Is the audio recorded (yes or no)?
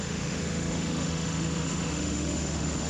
no